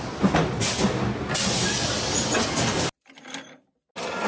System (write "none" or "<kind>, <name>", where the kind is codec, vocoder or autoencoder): none